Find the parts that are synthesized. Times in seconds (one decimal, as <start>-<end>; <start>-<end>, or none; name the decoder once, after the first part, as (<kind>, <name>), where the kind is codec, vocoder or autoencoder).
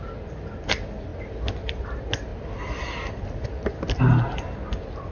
none